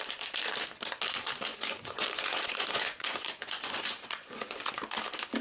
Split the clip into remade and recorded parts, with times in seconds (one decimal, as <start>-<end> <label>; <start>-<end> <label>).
0.0-1.5 recorded; 1.5-4.7 remade; 4.7-5.4 recorded